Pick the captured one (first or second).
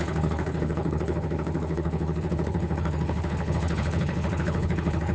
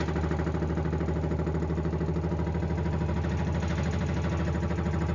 second